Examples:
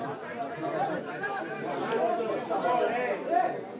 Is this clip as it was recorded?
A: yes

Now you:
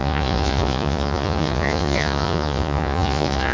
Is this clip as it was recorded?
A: no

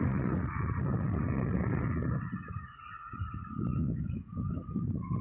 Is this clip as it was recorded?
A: no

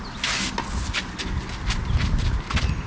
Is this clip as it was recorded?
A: yes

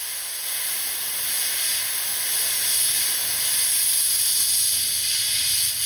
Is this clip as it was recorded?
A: yes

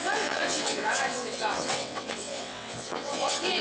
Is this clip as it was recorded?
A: no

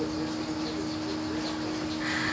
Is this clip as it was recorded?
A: yes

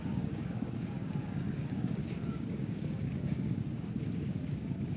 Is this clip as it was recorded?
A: no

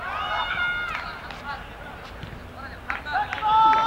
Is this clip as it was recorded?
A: yes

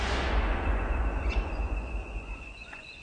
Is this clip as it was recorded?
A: no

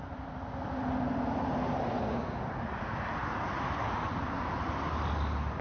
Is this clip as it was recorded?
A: yes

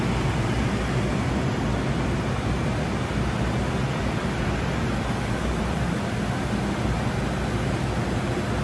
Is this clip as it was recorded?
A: yes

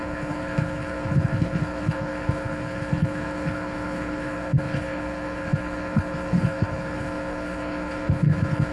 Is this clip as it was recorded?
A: no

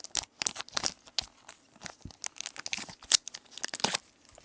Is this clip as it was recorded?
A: yes